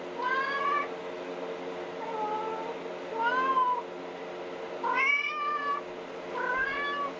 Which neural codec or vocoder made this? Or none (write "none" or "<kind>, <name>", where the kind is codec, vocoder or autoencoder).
none